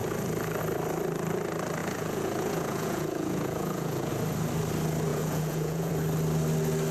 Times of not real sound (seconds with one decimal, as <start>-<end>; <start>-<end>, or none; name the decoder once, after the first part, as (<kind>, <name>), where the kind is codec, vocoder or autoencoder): 1.8-4.1 (vocoder, Vocos); 5.1-5.9